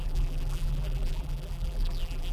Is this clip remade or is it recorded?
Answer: remade